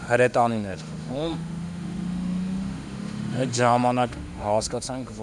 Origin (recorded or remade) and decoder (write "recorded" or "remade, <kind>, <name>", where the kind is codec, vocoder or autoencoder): remade, autoencoder, DAC-VAE